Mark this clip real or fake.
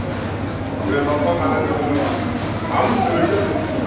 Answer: real